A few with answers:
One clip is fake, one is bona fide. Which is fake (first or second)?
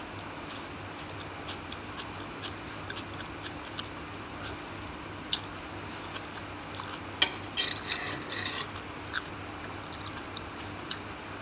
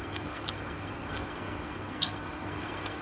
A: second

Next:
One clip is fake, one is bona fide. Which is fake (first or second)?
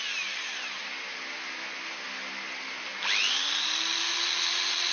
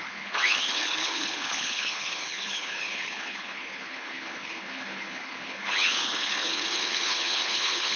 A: second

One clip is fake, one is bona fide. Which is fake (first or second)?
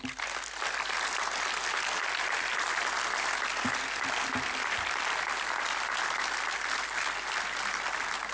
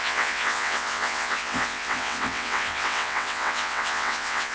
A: second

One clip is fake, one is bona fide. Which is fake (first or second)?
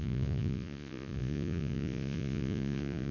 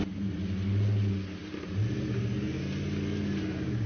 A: first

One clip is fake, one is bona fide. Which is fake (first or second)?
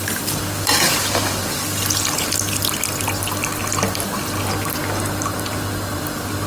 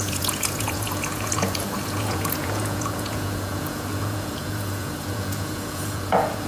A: second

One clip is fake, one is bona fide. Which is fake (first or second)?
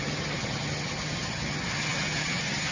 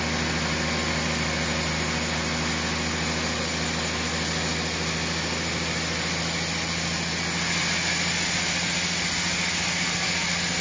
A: first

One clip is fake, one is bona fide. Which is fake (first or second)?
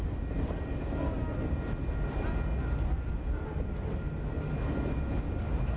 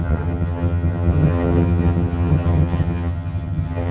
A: second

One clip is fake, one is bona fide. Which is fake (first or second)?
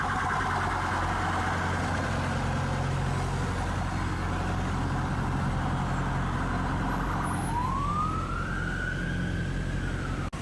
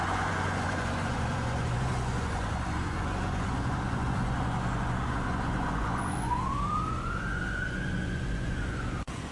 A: second